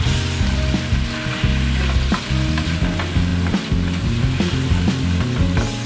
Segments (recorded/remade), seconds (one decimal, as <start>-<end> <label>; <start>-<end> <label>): 0.0-5.9 recorded